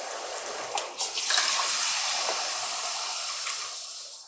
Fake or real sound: real